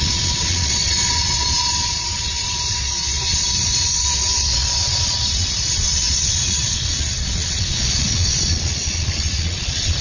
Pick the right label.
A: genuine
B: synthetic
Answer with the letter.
B